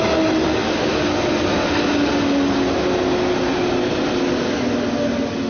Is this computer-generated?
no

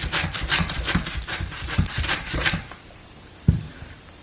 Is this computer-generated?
yes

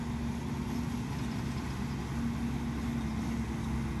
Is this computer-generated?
no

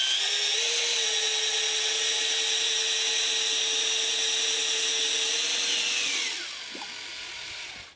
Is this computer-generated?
no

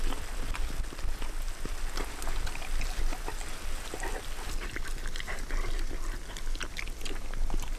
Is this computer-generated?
no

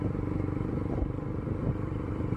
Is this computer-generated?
yes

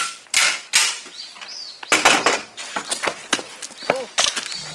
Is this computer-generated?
no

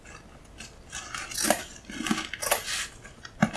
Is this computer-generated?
no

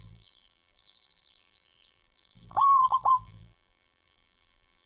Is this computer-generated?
yes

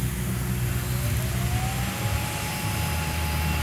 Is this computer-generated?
no